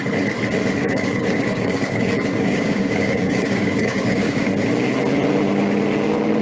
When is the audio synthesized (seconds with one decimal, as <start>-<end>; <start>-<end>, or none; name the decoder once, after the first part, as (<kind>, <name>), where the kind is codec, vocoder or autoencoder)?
0.8-4.5 (codec, DAC)